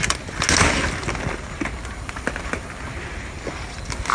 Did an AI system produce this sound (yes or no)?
no